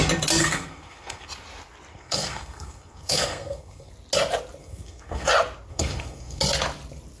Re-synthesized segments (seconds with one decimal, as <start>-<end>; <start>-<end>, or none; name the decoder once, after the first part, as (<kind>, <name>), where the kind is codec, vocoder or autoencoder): 0.4-1.3 (codec, SNAC); 1.9-3.9; 4.6-5.3; 5.7-6.4